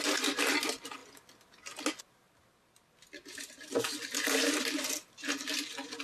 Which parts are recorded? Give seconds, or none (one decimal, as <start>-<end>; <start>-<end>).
0.0-6.0